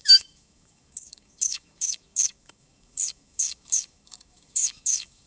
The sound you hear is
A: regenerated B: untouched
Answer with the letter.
A